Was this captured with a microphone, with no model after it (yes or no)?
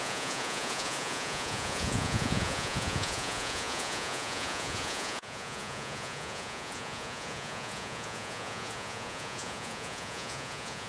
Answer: no